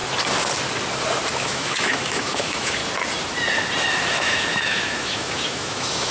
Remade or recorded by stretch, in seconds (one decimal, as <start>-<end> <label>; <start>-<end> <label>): 0.0-1.3 recorded; 1.3-2.8 remade; 2.8-4.1 recorded; 4.1-6.1 remade